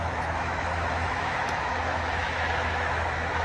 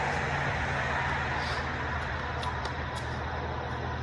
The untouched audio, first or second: second